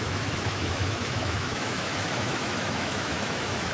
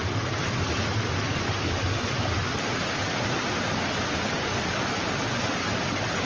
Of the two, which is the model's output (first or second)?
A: first